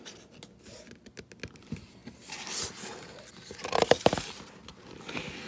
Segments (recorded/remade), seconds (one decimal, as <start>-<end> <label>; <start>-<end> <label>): 0.0-5.5 recorded